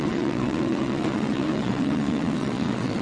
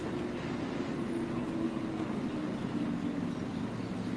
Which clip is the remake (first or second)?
first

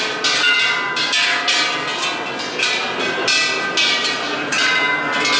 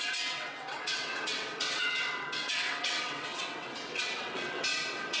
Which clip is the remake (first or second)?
second